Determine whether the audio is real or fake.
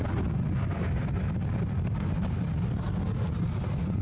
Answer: real